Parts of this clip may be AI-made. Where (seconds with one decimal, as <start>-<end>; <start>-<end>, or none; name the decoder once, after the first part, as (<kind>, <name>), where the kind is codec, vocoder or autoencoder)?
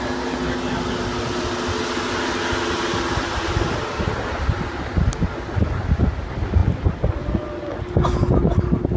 none